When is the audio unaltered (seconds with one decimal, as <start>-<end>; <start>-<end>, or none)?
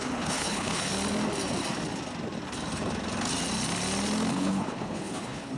0.9-4.3